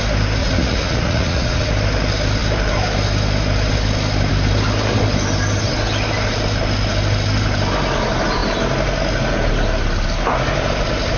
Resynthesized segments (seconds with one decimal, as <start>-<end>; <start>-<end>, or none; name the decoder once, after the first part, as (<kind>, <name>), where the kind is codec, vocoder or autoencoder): 0.4-1.7 (vocoder, Vocos)